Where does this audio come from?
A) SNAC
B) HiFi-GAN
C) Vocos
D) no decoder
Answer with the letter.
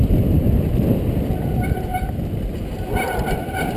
D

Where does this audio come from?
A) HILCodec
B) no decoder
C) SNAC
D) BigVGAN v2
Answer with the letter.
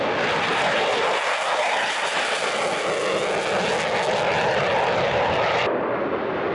B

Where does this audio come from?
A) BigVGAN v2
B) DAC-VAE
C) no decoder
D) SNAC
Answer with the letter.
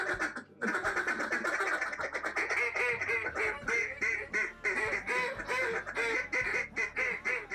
C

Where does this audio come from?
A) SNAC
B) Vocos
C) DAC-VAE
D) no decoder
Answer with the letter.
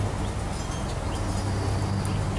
D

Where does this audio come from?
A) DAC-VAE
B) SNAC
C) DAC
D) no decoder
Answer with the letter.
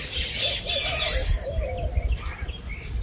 D